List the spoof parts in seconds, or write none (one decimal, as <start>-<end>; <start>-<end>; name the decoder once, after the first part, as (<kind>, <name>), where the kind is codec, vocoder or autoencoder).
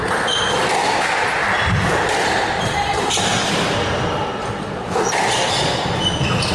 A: 1.4-3.1 (vocoder, BigVGAN v2); 4.4-4.9